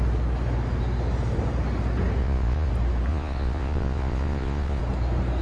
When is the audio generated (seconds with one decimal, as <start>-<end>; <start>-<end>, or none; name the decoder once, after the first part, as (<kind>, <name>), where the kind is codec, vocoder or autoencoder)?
2.2-2.7 (vocoder, Vocos); 3.1-4.8